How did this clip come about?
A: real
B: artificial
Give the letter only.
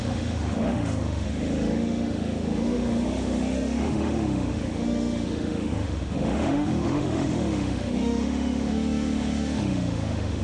B